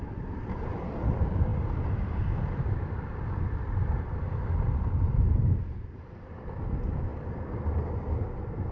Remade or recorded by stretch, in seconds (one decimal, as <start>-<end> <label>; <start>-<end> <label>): 0.0-8.7 remade

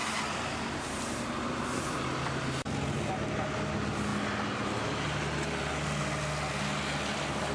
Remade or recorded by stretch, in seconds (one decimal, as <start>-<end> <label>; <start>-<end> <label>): 0.0-7.5 recorded

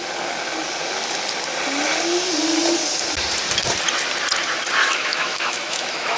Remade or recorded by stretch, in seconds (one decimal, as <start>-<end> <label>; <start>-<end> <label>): 0.0-4.8 recorded; 4.8-6.2 remade

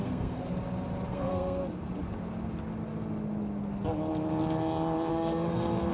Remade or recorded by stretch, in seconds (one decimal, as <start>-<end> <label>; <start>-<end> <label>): 0.0-0.4 remade; 0.4-1.1 recorded; 1.1-1.6 remade; 1.6-5.1 recorded; 5.1-5.9 remade